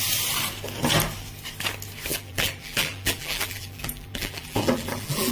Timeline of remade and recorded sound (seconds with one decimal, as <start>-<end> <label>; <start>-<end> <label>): 0.0-2.1 recorded; 2.1-5.3 remade